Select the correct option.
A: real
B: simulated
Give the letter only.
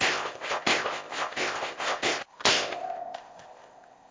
B